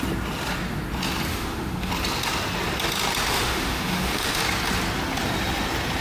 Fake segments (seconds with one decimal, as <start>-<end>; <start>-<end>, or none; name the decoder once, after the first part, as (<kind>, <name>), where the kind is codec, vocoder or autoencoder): 1.3-1.9 (autoencoder, DAC-VAE); 3.3-4.4